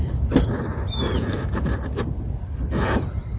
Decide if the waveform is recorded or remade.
recorded